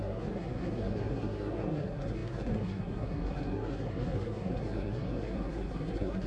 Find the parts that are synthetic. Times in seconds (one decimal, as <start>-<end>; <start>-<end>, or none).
0.0-6.3